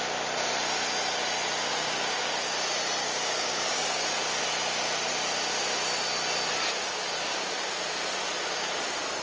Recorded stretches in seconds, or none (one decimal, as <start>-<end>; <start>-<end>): 0.0-1.7; 2.3-3.0; 4.0-7.3; 7.8-9.2